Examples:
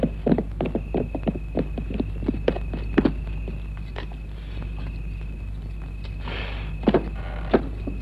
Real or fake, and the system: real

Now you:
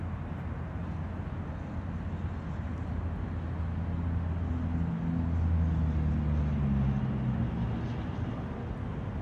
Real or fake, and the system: real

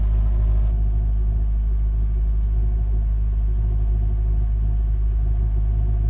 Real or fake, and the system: real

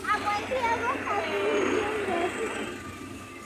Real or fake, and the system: real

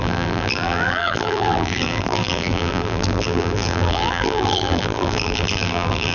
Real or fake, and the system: fake, vocoder, BigVGAN v2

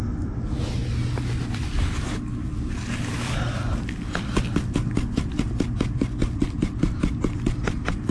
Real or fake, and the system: real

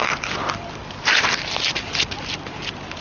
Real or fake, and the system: real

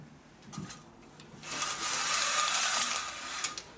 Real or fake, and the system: real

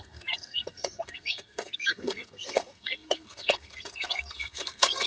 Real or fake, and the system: fake, codec, SNAC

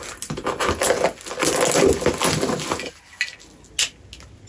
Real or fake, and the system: real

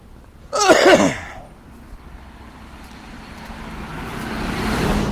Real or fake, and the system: real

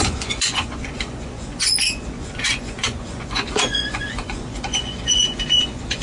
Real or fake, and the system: fake, vocoder, Vocos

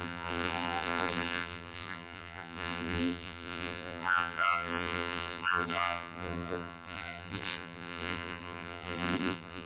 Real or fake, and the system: fake, vocoder, BigVGAN v2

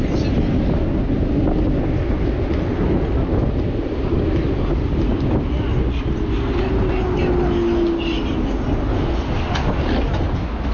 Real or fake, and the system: real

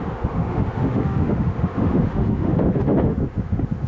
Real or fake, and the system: fake, autoencoder, DAC-VAE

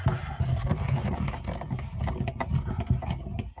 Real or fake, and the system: real